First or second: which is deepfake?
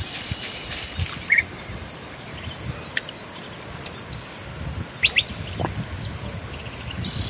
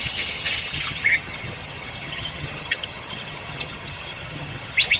second